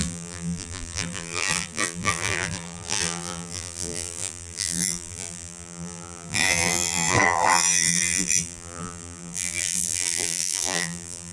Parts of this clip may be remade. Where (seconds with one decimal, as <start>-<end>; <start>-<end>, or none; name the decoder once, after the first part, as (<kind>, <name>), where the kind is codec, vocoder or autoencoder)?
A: 0.0-11.3 (vocoder, BigVGAN v2)